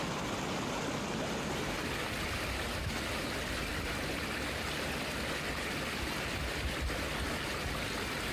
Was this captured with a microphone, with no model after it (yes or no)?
yes